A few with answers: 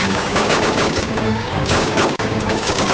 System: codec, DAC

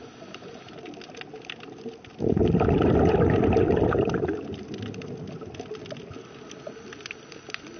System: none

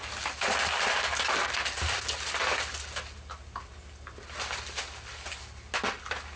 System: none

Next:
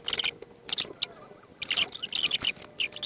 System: none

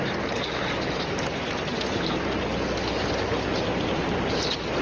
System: none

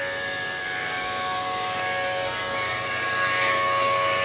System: codec, DAC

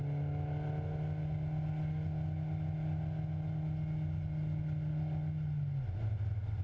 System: none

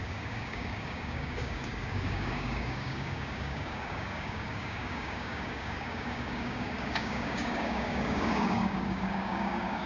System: codec, DAC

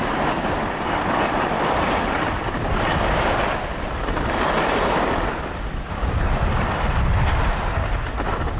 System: none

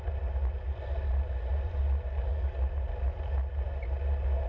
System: none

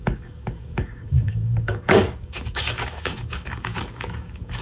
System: codec, DAC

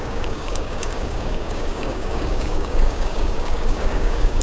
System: codec, DAC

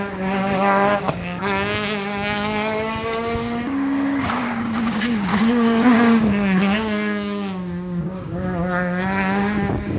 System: codec, DAC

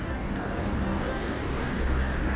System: codec, DAC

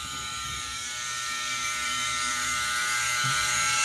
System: codec, DAC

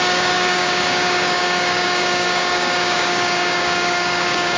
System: codec, DAC